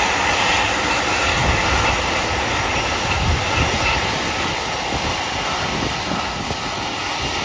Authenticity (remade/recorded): recorded